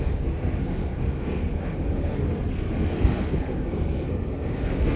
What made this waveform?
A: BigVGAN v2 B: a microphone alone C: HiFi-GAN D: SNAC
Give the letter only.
D